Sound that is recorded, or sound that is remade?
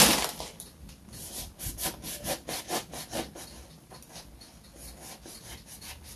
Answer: recorded